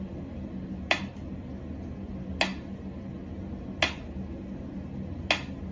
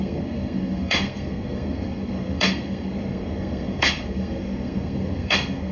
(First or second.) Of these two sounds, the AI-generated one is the second